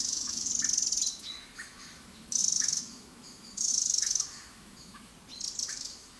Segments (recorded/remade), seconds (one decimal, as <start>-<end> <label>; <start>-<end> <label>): 0.0-0.5 remade; 0.5-1.1 recorded; 1.1-5.1 remade; 5.1-5.7 recorded; 5.7-6.2 remade